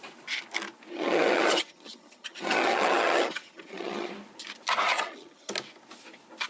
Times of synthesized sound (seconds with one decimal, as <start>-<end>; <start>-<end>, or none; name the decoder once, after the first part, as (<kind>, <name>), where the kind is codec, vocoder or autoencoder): 0.9-4.1 (vocoder, HiFi-GAN); 4.9-5.5